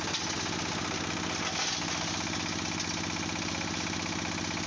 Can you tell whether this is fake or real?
real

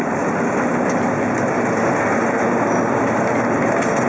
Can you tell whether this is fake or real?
real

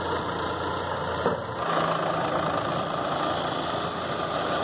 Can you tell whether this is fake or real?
real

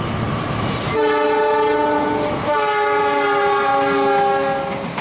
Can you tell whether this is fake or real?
real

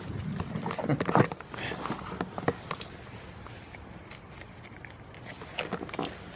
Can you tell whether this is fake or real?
real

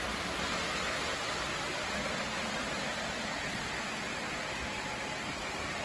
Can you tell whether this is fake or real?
real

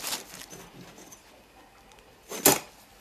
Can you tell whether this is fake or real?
real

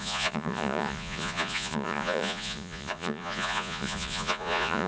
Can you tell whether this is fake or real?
fake